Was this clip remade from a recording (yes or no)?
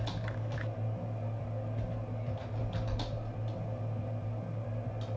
no